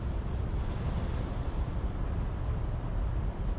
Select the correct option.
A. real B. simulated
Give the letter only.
A